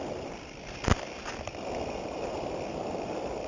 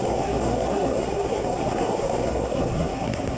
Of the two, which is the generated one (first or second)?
second